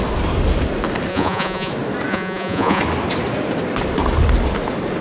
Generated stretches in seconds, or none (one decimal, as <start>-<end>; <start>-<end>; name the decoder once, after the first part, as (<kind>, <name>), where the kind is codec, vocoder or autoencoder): 1.1-1.7 (vocoder, Vocos); 2.1-2.8

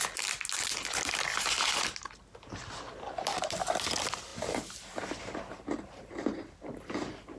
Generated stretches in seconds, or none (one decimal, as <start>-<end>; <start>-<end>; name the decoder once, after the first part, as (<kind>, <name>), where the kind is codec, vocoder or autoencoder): none

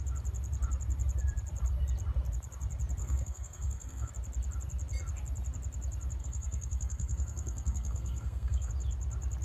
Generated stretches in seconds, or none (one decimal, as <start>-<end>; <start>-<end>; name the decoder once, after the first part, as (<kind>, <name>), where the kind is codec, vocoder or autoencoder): 3.0-4.1 (codec, SNAC); 6.2-8.7

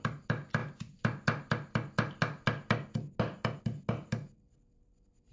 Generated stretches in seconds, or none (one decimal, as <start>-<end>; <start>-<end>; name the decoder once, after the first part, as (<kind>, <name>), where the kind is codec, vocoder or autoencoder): none

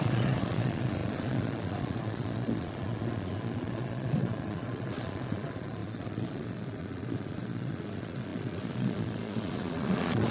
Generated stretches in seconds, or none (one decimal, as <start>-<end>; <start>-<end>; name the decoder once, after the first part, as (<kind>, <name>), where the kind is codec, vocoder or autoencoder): 0.0-10.3 (vocoder, Vocos)

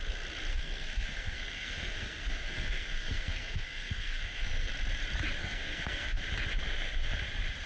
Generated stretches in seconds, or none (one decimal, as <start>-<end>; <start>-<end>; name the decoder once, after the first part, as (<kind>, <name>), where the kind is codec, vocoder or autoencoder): 0.5-4.7 (codec, SNAC); 5.4-6.2